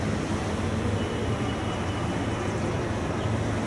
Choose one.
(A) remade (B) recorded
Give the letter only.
B